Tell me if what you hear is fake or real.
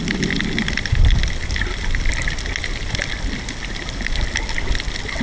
real